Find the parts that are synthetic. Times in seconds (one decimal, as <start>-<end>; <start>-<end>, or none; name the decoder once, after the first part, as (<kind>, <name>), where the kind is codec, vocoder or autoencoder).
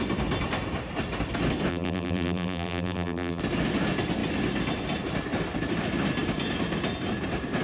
1.7-3.4 (vocoder, BigVGAN v2)